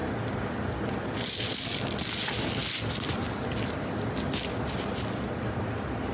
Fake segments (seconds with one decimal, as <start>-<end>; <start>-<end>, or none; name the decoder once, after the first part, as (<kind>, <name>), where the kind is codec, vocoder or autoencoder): none